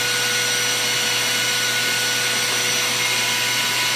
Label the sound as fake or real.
real